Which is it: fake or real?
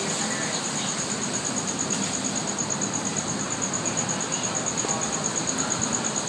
real